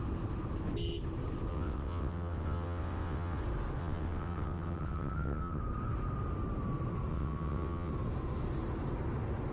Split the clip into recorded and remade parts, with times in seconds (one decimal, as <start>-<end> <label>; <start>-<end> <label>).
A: 0.0-1.5 recorded; 1.5-3.4 remade; 3.4-3.8 recorded; 3.8-5.6 remade; 5.6-7.1 recorded; 7.1-7.9 remade; 7.9-9.5 recorded